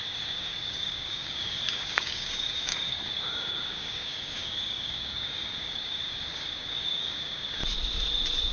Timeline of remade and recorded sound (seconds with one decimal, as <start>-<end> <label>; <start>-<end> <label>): 0.0-7.6 remade; 7.6-8.5 recorded